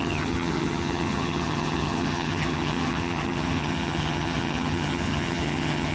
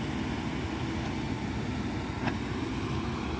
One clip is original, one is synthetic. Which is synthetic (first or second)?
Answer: first